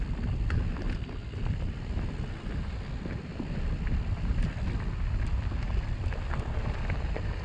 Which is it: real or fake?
real